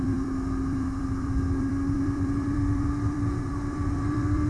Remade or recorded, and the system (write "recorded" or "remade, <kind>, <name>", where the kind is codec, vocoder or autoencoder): remade, vocoder, BigVGAN v2